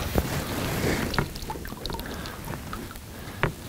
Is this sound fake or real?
real